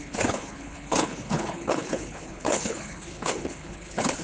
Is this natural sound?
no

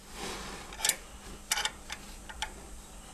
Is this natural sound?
yes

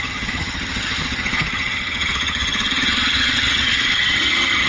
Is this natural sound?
no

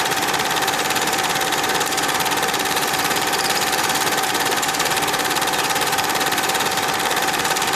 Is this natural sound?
no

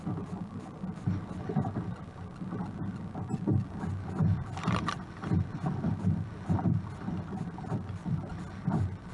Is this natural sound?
yes